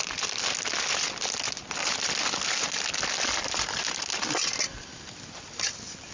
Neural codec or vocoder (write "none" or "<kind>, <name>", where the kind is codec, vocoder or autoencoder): none